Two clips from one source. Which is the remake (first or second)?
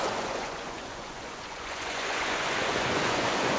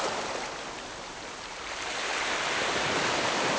first